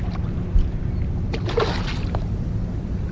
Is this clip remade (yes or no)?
no